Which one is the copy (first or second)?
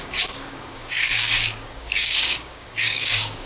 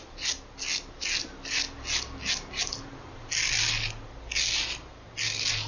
first